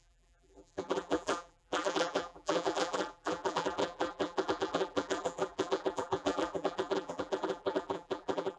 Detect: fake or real fake